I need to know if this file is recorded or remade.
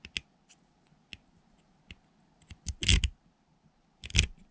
recorded